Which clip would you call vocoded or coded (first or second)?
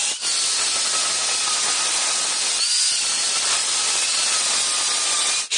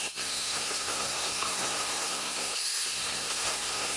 second